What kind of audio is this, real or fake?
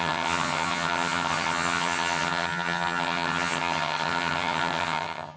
fake